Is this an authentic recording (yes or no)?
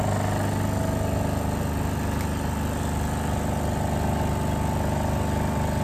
yes